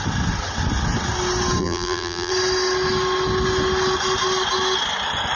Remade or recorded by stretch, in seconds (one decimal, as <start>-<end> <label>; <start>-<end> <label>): 0.0-1.6 recorded; 1.6-2.3 remade; 2.3-5.4 recorded